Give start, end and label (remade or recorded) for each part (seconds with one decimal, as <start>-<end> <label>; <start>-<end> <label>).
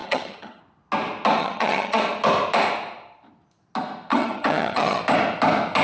0.0-0.6 remade; 0.6-1.4 recorded; 1.4-2.0 remade; 2.0-4.1 recorded; 4.1-5.0 remade; 5.0-5.8 recorded